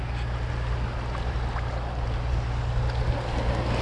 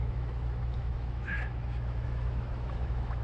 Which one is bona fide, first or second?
first